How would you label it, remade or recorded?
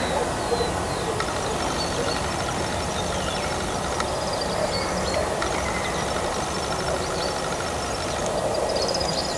recorded